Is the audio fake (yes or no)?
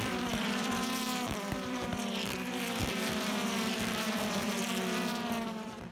yes